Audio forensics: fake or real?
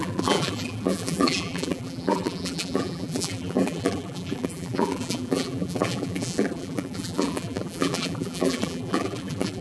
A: fake